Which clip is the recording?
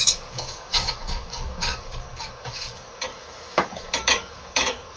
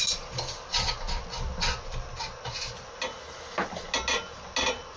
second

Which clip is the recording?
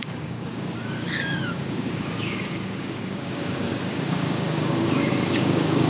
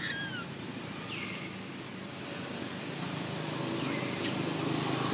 second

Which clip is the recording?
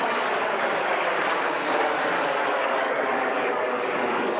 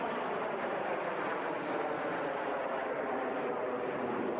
second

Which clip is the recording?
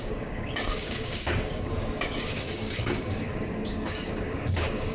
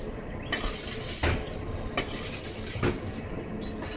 second